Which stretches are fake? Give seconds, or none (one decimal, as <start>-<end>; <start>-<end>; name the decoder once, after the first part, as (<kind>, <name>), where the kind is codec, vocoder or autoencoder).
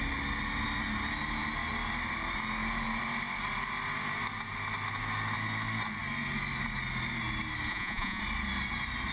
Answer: 7.7-8.2 (vocoder, Vocos)